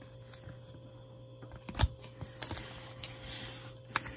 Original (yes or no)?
yes